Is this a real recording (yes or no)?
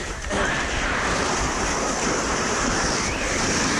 no